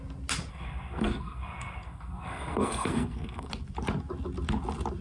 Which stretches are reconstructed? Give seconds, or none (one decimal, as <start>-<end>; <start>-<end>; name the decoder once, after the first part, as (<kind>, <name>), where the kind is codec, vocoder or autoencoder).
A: 0.5-3.5 (codec, SNAC)